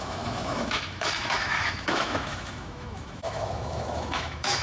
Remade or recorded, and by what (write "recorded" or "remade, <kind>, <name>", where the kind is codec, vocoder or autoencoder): remade, autoencoder, DAC-VAE